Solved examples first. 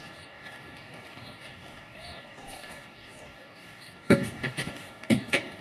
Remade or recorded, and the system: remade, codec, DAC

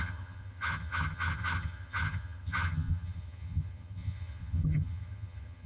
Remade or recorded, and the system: remade, vocoder, HiFi-GAN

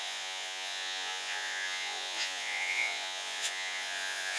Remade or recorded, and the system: remade, vocoder, Vocos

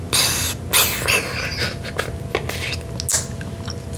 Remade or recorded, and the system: recorded